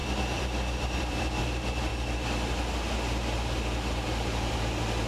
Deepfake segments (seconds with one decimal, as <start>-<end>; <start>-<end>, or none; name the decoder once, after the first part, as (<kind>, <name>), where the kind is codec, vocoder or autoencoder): 0.0-1.4 (vocoder, BigVGAN v2)